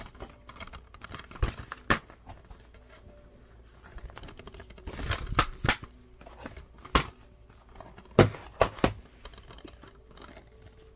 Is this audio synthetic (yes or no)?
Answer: no